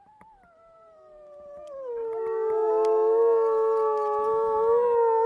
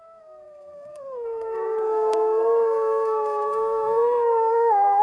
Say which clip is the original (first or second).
first